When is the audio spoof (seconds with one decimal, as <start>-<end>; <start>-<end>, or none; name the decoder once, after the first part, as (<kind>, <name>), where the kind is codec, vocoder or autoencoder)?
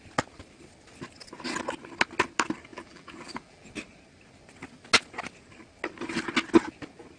2.7-3.7 (vocoder, BigVGAN v2)